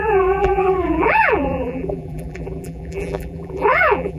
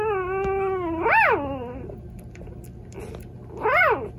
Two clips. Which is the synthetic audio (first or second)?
first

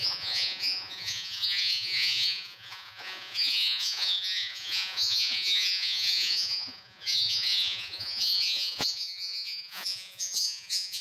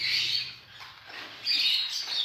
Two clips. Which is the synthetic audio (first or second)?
first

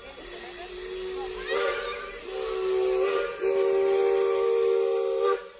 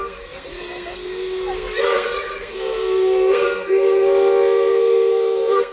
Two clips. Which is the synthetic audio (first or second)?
second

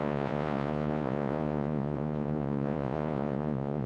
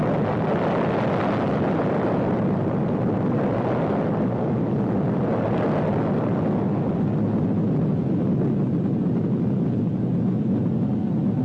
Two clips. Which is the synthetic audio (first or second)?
first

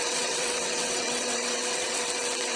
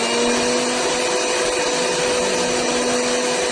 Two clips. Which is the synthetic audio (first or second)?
first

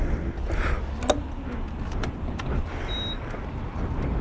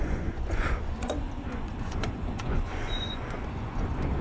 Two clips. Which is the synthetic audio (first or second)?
second